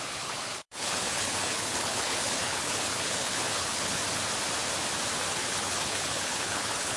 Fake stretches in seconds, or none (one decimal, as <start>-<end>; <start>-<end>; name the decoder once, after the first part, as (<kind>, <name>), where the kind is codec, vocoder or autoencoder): 0.0-4.0 (codec, HILCodec); 5.3-7.0